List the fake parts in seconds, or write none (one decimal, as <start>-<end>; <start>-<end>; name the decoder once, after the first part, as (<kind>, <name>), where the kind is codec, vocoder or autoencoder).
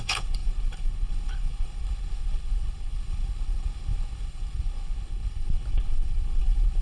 0.0-6.8 (codec, HILCodec)